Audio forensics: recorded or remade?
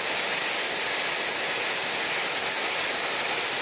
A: recorded